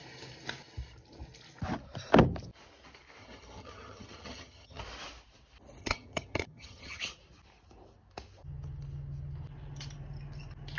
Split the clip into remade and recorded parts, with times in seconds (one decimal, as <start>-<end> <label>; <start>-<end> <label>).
0.0-3.2 recorded; 3.2-4.8 remade; 4.8-5.8 recorded; 5.8-7.0 remade; 7.0-10.8 recorded